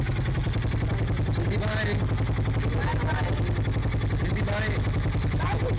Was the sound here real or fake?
real